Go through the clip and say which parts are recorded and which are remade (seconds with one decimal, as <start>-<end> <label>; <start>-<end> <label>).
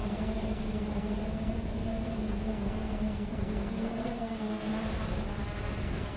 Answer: 0.0-4.7 remade; 4.7-5.8 recorded; 5.8-6.2 remade